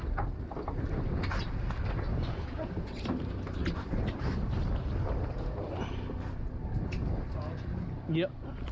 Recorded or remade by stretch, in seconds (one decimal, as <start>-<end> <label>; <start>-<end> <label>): 0.0-8.7 recorded